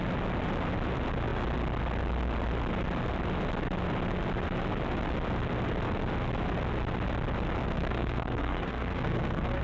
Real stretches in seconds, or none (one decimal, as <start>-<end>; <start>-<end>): 0.0-7.6